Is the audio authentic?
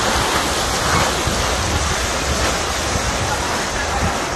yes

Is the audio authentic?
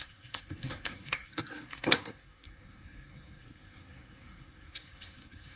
no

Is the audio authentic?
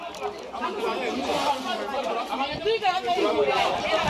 yes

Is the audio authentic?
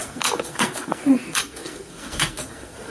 no